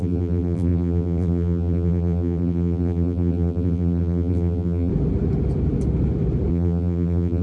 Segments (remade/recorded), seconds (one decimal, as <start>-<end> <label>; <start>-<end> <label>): 0.0-4.9 remade; 4.9-6.5 recorded; 6.5-7.4 remade